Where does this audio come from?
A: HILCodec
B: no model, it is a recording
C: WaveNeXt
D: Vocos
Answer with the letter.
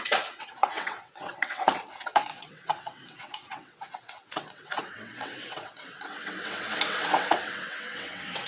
C